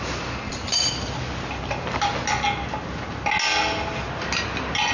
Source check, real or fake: real